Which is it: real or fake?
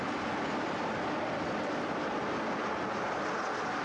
real